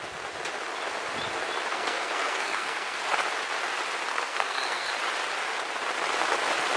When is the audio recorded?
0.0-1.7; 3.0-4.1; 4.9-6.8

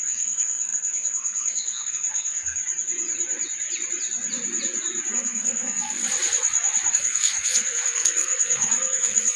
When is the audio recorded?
2.6-5.1; 6.0-6.9

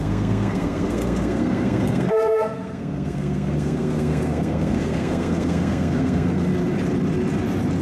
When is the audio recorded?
6.5-7.8

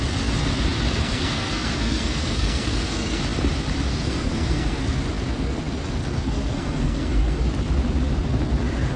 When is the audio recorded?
0.0-1.0; 3.2-3.9; 4.8-6.0; 7.4-9.0

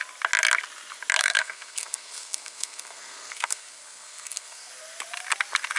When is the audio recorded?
0.0-1.2; 4.7-5.8

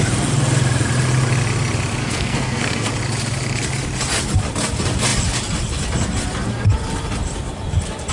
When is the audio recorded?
0.0-2.0; 2.9-8.1

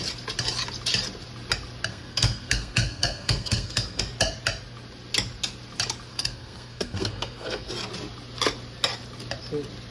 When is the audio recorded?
0.0-1.9; 4.0-6.1; 7.7-9.9